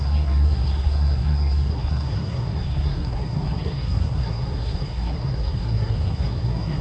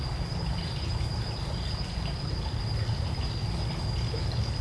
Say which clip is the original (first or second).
second